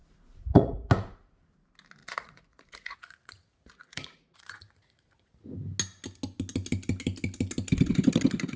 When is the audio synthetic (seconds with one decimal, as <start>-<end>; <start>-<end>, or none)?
0.0-0.9; 2.0-5.3